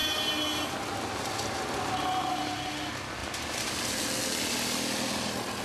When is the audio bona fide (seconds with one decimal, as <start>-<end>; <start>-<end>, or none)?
0.0-5.6